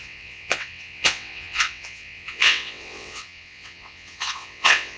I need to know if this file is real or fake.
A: fake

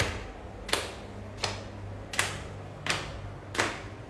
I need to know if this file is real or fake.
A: real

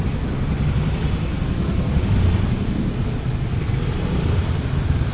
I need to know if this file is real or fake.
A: real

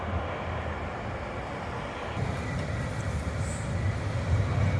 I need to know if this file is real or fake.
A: real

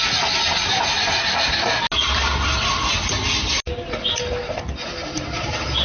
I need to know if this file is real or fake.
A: real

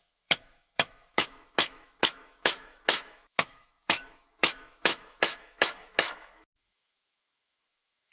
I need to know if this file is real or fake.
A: fake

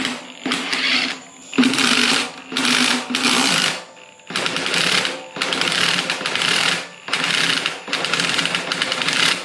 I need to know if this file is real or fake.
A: fake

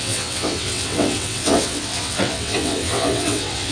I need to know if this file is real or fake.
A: fake